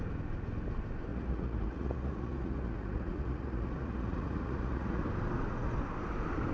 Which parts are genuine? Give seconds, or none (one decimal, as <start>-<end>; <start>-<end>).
0.0-1.1; 5.0-6.5